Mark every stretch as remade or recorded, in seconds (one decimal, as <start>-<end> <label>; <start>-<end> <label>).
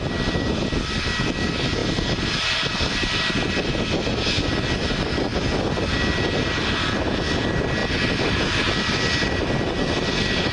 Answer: 0.0-10.5 recorded